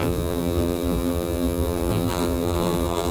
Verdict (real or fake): fake